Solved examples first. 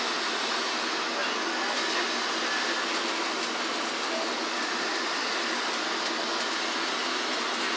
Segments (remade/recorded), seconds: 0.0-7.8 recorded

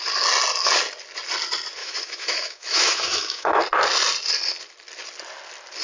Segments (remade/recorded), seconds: 0.0-1.8 recorded; 1.8-3.6 remade; 3.6-5.8 recorded

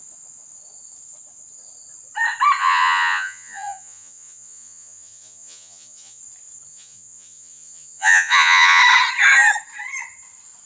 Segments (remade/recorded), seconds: 0.0-2.6 recorded; 2.6-6.2 remade; 6.2-6.7 recorded; 6.7-8.8 remade; 8.8-10.7 recorded

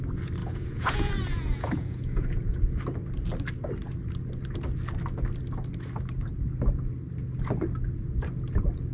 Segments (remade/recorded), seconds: 0.0-0.4 recorded; 0.4-2.6 remade; 2.6-8.9 recorded

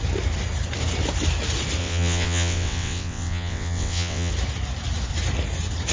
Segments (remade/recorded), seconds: 0.0-1.8 recorded; 1.8-4.3 remade; 4.3-5.9 recorded